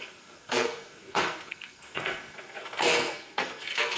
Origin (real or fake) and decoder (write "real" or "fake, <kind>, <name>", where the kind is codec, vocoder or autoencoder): fake, codec, SNAC